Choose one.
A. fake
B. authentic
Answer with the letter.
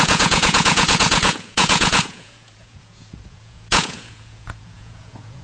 A